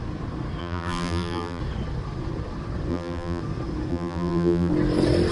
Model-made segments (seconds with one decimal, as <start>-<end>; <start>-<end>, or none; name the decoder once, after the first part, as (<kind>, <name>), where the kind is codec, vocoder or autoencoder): 0.6-1.6 (vocoder, BigVGAN v2); 2.9-3.4; 3.9-4.7